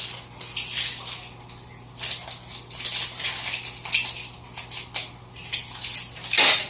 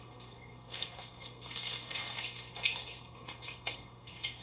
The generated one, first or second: second